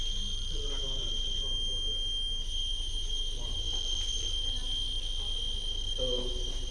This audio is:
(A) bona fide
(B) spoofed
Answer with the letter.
A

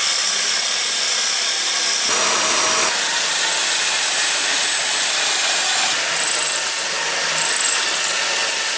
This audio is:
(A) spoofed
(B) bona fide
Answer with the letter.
B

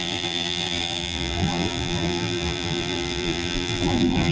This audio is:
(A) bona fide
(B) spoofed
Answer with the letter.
B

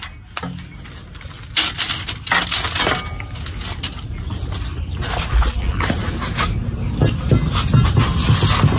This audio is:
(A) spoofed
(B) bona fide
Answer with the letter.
B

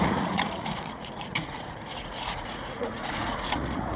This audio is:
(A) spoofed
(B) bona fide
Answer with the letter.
A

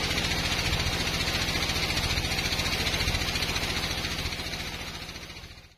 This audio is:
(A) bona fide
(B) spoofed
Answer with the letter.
A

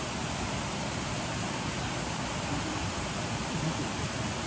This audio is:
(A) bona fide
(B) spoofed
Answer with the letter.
A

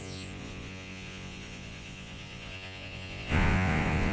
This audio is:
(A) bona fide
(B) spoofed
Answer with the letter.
B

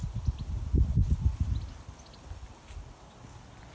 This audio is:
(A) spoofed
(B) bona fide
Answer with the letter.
B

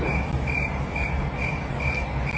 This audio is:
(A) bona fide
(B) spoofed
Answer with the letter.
A